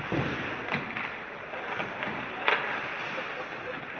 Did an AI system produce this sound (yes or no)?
no